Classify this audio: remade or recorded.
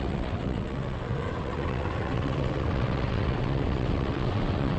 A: remade